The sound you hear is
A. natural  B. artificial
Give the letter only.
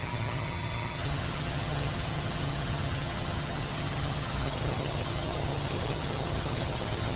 B